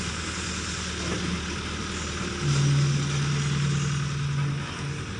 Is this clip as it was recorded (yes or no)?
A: yes